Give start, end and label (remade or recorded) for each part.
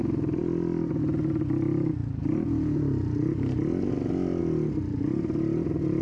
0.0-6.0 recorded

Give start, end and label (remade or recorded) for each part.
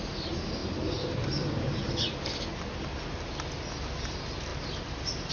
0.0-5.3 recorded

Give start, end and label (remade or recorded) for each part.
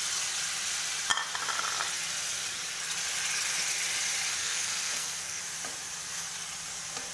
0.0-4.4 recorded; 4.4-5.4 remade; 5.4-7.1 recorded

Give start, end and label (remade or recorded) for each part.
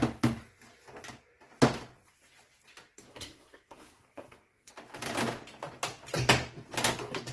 0.0-3.1 recorded; 3.1-4.7 remade; 4.7-7.3 recorded